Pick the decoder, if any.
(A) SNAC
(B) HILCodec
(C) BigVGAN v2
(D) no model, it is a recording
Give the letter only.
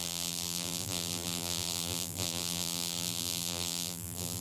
C